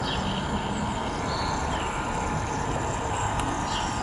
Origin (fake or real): real